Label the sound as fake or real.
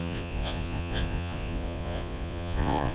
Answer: fake